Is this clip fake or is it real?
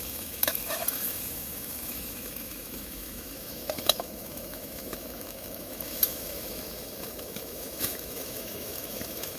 fake